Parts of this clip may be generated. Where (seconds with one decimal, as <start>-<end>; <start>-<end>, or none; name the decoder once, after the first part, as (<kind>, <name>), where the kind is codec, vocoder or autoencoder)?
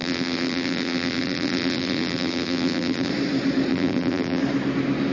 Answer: 0.0-3.1 (vocoder, BigVGAN v2); 3.7-4.4